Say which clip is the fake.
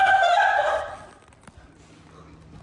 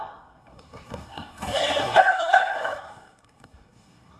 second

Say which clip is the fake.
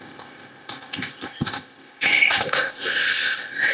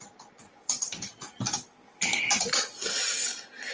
first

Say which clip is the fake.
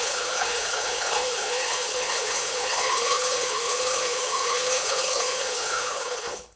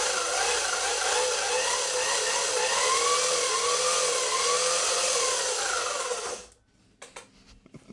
first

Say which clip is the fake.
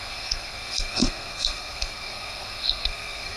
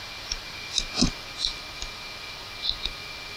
first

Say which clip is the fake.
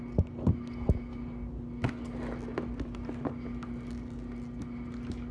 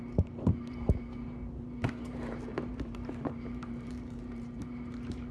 second